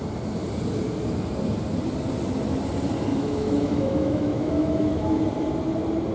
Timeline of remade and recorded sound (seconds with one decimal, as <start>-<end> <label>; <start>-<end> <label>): 0.0-3.1 recorded; 3.1-5.2 remade; 5.2-6.1 recorded